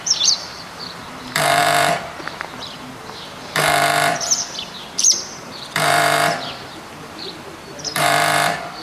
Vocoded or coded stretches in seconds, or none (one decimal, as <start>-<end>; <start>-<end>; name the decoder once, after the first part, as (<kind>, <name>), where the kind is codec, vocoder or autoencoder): 0.0-8.8 (vocoder, BigVGAN v2)